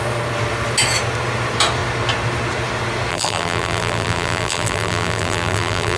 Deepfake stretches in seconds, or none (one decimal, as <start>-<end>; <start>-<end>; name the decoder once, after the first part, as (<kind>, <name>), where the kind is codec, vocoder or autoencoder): 3.1-6.0 (vocoder, BigVGAN v2)